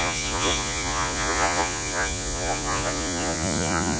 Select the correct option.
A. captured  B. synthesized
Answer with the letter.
B